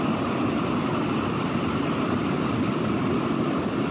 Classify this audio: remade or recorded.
recorded